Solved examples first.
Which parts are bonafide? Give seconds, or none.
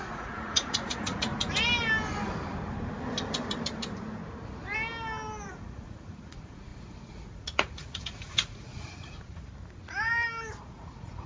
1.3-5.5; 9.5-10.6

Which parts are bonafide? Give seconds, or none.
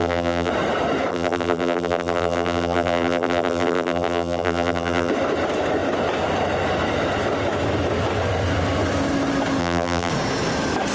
0.5-1.1; 5.1-9.6; 10.1-10.9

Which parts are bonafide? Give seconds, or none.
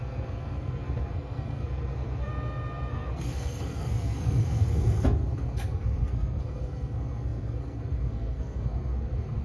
2.3-2.9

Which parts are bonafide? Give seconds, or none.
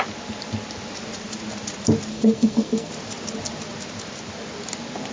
0.0-2.1; 2.9-5.1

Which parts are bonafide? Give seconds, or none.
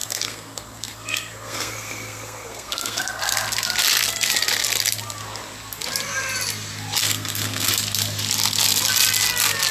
3.2-7.0; 7.7-9.7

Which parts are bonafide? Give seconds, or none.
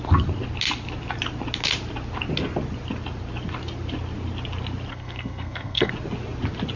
0.0-4.9; 5.9-6.8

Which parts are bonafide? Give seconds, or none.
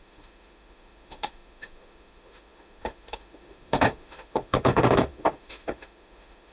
none